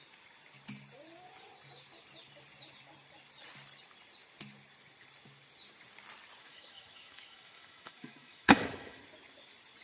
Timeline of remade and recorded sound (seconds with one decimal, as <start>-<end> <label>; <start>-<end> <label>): 0.0-6.4 recorded; 6.4-9.0 remade; 9.0-9.8 recorded